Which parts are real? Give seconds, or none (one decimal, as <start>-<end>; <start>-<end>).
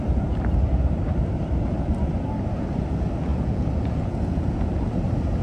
0.0-3.3; 4.8-5.4